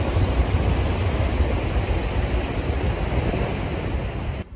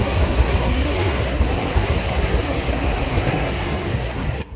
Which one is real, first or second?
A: first